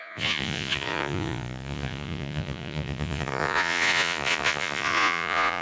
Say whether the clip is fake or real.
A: fake